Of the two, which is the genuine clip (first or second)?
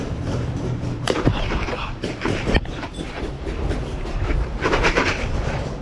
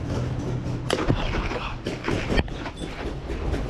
second